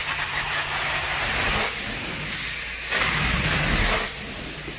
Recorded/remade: recorded